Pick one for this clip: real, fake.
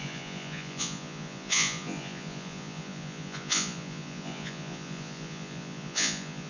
fake